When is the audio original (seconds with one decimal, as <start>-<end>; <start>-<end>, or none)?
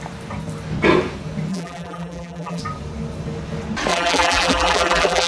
0.0-1.5; 2.6-3.9